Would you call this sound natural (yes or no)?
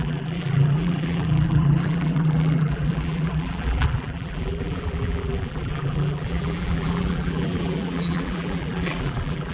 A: no